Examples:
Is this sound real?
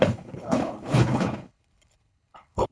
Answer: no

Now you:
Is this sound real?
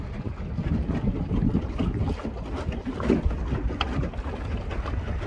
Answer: yes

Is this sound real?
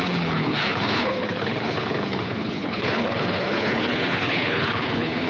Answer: no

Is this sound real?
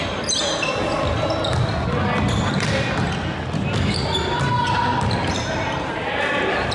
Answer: yes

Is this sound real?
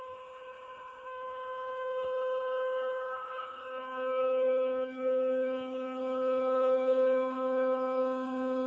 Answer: no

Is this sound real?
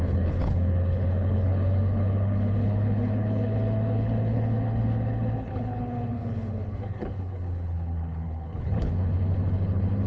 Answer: no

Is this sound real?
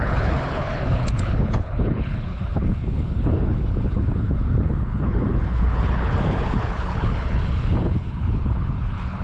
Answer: no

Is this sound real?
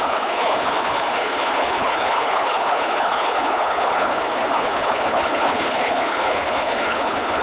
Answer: no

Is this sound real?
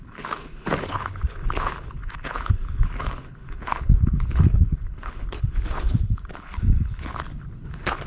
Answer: no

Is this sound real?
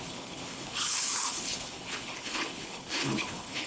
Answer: no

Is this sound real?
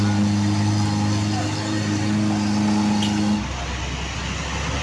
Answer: yes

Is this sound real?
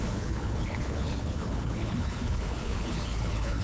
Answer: no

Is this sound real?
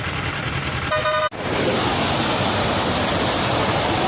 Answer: yes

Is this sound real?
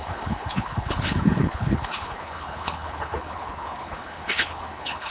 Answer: no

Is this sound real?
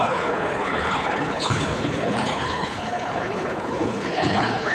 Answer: no